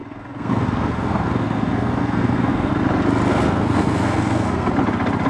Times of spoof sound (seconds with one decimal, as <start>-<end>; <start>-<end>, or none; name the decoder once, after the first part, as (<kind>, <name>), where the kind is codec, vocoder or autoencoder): 0.0-2.7 (codec, SNAC); 3.3-4.7